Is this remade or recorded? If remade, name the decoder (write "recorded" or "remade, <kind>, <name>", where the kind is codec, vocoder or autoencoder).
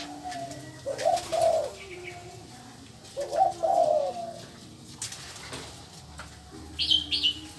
recorded